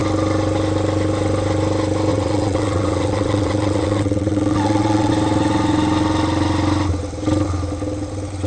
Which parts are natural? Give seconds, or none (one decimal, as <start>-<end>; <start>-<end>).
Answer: 0.0-2.1; 5.1-8.5